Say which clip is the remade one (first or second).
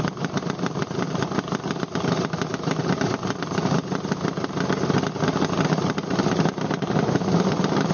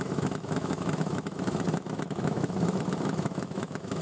second